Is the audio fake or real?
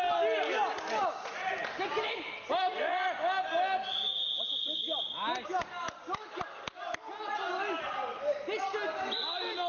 real